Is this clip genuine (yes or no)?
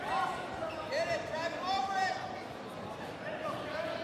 no